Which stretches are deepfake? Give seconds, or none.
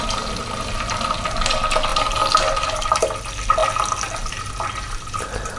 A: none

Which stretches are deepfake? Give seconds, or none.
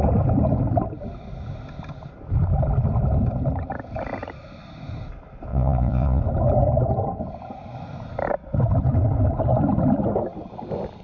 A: 5.5-6.2 (vocoder, Vocos)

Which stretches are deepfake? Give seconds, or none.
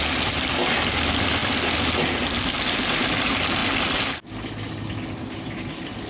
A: none